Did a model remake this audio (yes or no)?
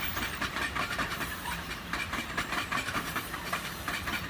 yes